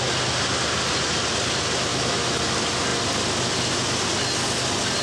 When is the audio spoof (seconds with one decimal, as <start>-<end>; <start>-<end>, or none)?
1.9-2.4